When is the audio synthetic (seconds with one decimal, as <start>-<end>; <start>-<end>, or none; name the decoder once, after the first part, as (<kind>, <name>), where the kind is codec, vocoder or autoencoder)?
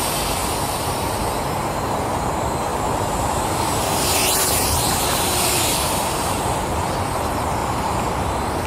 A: 0.4-1.2 (vocoder, BigVGAN v2); 2.7-6.4; 7.6-8.1